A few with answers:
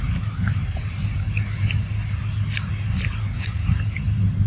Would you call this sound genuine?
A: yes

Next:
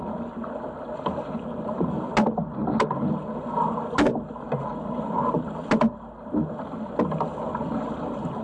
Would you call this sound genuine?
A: yes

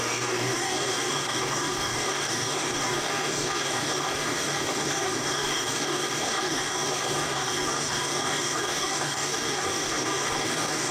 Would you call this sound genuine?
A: no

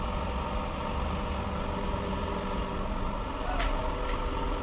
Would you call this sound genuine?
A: yes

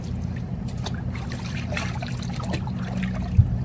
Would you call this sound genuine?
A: yes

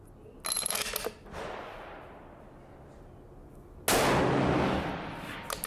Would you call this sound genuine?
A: yes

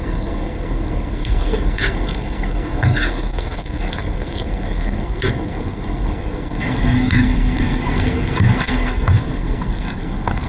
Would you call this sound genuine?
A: no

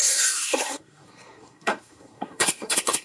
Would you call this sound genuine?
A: no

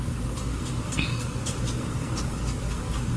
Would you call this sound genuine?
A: no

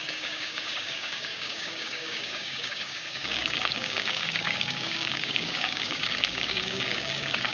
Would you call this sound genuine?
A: no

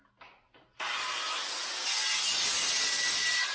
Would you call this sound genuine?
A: yes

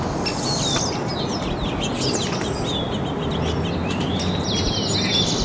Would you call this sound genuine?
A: yes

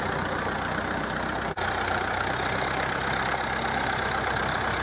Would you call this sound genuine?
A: yes